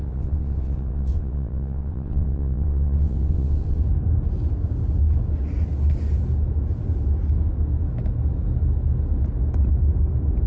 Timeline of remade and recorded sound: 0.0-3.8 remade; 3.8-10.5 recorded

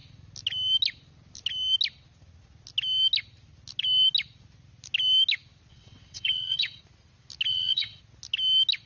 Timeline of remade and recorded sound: 0.0-5.7 recorded; 5.7-6.8 remade; 6.8-7.5 recorded; 7.5-8.0 remade; 8.0-8.9 recorded

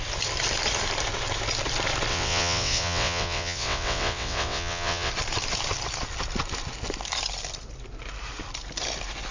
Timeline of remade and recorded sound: 0.0-2.1 recorded; 2.1-5.1 remade; 5.1-9.3 recorded

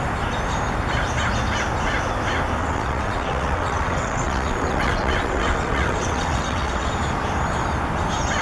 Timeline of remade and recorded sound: 0.0-2.6 recorded; 2.6-6.9 remade; 6.9-8.4 recorded

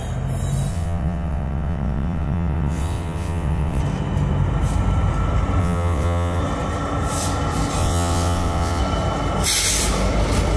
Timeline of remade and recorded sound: 0.0-0.7 recorded; 0.7-3.8 remade; 3.8-5.6 recorded; 5.6-6.4 remade; 6.4-7.8 recorded; 7.8-8.8 remade; 8.8-10.6 recorded

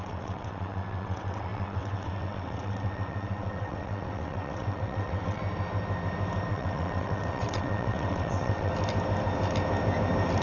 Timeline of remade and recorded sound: 0.0-5.4 remade; 5.4-6.5 recorded; 6.5-8.7 remade; 8.7-10.4 recorded

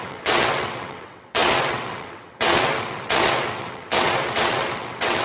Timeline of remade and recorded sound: 0.0-5.2 remade

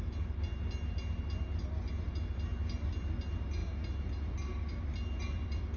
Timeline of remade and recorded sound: 0.0-5.8 recorded